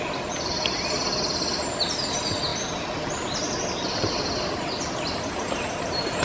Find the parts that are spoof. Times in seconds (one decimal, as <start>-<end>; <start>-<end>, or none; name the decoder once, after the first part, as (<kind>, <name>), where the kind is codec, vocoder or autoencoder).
none